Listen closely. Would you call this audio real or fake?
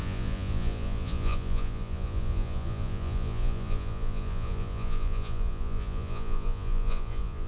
fake